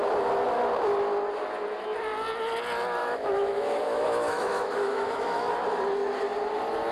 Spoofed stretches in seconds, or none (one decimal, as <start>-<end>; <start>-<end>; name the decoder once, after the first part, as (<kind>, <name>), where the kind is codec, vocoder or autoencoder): 3.0-5.5 (autoencoder, DAC-VAE)